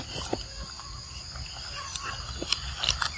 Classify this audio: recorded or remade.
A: recorded